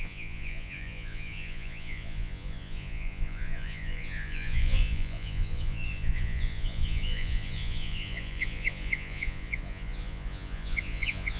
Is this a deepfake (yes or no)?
yes